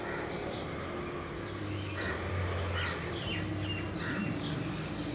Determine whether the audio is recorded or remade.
recorded